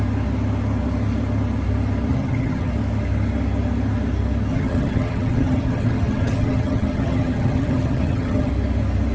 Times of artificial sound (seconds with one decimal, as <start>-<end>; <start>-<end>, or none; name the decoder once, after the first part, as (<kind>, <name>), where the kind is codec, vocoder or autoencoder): 2.1-2.7 (vocoder, HiFi-GAN); 4.5-8.5